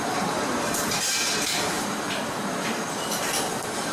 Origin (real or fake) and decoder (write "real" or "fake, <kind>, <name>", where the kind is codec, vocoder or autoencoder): fake, vocoder, BigVGAN v2